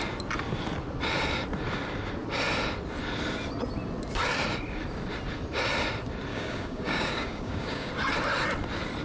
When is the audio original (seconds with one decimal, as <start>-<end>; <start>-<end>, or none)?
0.0-6.3; 7.9-9.0